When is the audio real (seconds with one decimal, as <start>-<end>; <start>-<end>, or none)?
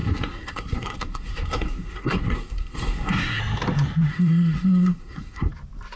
3.4-4.1; 5.5-6.0